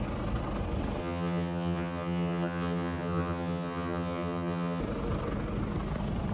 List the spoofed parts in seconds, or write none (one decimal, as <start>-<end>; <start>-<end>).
1.0-4.8